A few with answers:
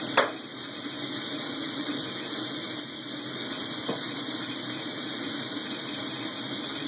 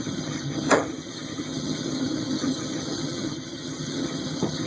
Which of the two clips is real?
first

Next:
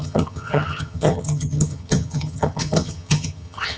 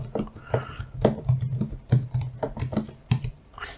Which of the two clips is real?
second